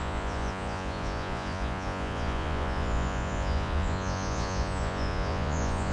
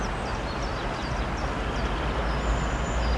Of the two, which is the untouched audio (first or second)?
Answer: second